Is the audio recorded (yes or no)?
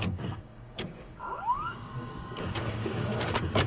no